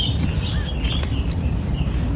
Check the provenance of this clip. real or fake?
real